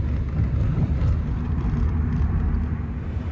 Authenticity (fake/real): real